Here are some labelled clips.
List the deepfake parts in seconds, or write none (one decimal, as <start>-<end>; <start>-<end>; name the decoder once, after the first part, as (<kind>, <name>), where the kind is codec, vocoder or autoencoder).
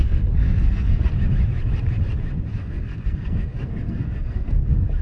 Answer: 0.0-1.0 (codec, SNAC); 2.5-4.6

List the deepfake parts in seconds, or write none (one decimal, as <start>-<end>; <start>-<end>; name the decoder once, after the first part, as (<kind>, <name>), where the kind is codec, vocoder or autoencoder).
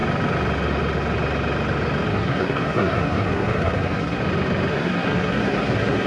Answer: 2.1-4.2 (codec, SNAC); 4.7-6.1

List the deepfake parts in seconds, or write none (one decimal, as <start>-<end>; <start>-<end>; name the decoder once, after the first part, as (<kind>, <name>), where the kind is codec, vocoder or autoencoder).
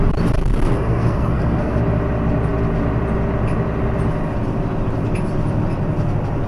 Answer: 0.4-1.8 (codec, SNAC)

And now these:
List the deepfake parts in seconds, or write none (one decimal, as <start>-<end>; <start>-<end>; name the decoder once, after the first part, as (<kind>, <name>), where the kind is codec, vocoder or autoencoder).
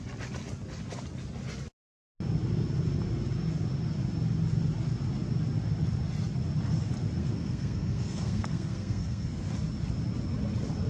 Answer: 7.2-9.5 (codec, SNAC)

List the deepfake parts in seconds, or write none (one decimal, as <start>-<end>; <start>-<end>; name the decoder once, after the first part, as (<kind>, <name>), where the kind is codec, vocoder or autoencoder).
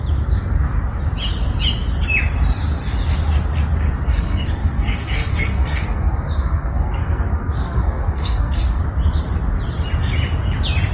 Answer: 4.1-8.8 (codec, SNAC)